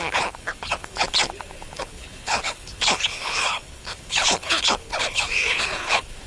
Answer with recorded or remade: remade